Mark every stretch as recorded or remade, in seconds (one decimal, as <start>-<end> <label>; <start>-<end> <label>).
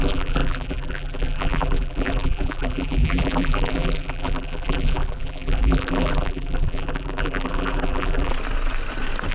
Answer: 0.0-8.3 remade; 8.3-9.3 recorded